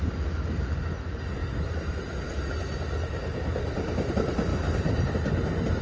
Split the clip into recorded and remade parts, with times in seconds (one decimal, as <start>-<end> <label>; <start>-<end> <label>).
0.0-5.8 recorded